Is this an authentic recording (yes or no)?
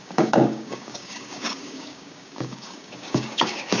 no